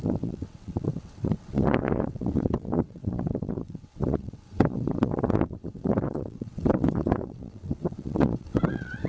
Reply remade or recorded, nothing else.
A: remade